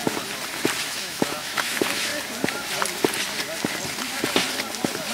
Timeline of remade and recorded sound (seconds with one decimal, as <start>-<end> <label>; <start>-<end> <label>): 0.0-0.8 recorded; 0.8-2.1 remade; 2.1-5.1 recorded